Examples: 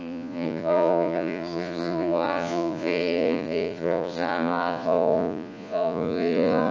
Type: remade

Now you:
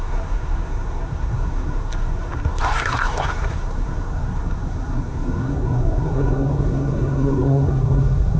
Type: remade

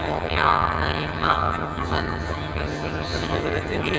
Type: remade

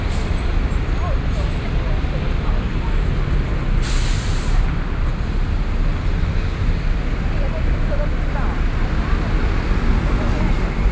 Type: recorded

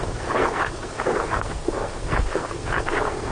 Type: remade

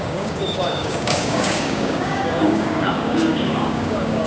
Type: remade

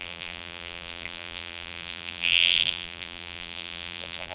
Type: remade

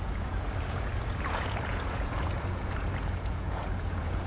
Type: remade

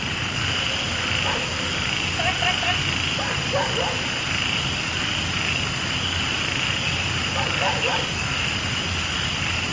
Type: recorded